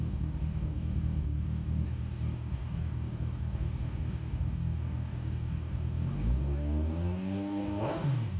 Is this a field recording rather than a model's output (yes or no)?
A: no